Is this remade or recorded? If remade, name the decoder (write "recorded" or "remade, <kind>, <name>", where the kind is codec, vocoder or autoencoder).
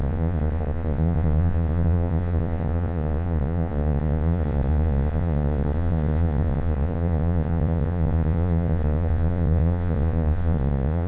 remade, vocoder, Vocos